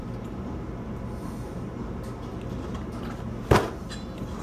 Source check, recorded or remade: remade